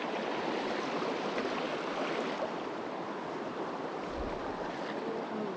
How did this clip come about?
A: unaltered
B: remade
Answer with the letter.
A